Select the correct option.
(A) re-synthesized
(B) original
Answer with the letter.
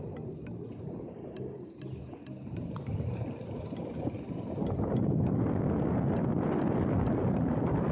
B